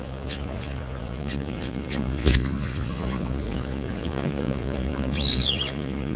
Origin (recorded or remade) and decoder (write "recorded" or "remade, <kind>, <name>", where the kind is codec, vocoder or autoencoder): remade, vocoder, Vocos